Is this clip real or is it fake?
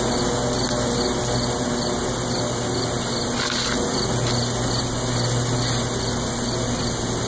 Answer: real